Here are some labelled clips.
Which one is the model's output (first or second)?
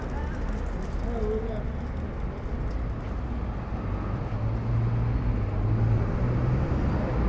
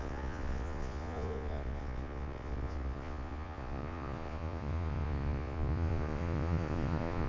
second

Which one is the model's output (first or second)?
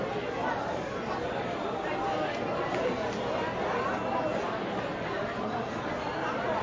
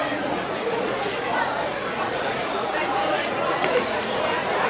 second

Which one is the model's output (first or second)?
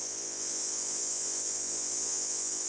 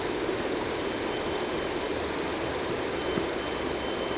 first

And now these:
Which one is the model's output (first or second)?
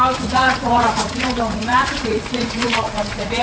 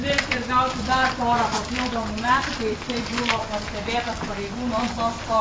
first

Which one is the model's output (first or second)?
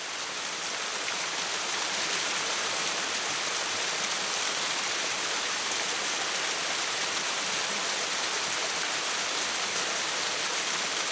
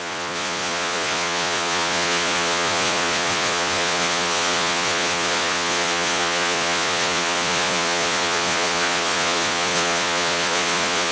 second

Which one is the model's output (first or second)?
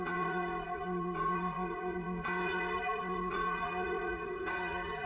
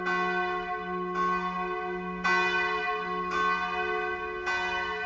first